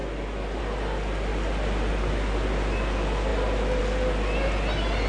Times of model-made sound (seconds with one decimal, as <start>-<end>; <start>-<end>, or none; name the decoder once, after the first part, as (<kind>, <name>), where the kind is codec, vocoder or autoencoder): none